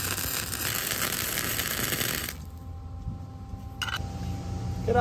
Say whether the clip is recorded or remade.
recorded